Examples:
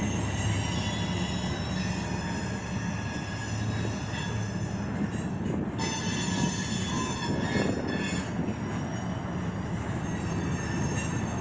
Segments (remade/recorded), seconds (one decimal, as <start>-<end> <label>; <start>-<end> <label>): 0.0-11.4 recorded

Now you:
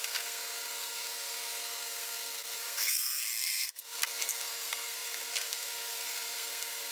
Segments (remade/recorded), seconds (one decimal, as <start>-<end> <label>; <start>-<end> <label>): 0.0-6.9 remade

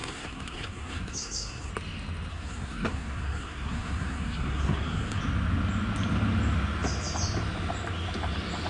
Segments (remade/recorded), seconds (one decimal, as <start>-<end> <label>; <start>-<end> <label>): 0.0-1.7 remade; 1.7-2.3 recorded; 2.3-5.2 remade; 5.2-8.7 recorded

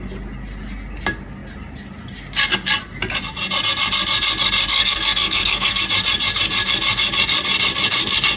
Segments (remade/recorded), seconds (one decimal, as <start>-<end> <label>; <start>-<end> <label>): 0.0-4.7 recorded; 4.7-5.8 remade; 5.8-8.4 recorded

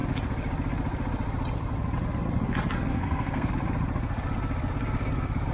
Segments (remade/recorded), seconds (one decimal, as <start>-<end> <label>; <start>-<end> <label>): 0.0-2.9 recorded; 2.9-3.5 remade; 3.5-5.5 recorded

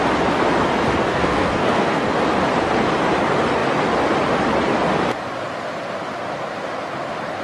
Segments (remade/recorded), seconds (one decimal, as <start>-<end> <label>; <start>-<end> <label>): 0.0-1.1 recorded; 1.1-2.0 remade; 2.0-7.4 recorded

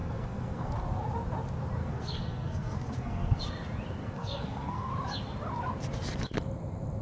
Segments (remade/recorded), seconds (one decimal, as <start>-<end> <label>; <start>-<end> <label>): 0.0-0.7 remade; 0.7-1.8 recorded; 1.8-3.4 remade; 3.4-4.0 recorded; 4.0-4.9 remade; 4.9-7.0 recorded

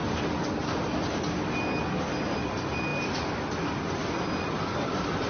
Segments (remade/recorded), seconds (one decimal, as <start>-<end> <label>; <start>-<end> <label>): 0.0-5.3 recorded